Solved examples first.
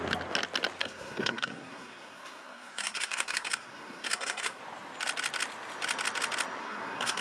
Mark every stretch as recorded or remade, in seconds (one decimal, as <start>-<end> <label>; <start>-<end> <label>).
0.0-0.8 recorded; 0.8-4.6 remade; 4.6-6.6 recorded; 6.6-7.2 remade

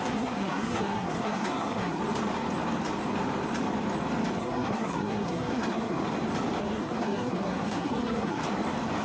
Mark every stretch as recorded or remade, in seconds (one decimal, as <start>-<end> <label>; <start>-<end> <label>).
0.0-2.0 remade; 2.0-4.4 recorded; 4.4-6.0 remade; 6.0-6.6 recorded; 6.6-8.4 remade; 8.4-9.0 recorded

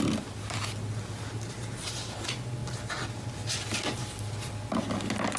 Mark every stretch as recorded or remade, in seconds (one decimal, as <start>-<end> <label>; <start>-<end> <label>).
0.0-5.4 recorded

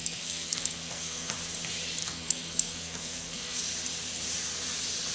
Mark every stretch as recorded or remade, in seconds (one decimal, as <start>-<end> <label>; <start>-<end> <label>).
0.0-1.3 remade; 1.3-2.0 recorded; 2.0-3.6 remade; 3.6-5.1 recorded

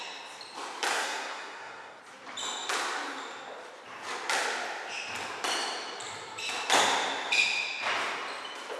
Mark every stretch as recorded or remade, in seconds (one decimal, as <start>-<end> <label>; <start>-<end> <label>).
0.0-0.9 recorded; 0.9-2.0 remade; 2.0-8.8 recorded

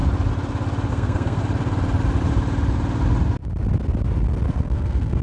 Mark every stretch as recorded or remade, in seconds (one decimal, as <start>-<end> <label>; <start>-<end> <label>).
0.0-0.9 recorded; 0.9-1.4 remade; 1.4-4.5 recorded; 4.5-5.2 remade

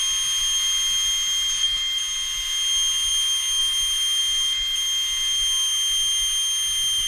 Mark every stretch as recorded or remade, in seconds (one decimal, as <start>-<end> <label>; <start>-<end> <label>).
0.0-7.1 recorded